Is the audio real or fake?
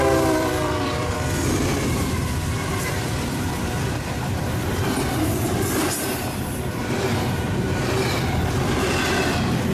fake